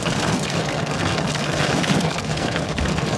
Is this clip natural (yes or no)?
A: no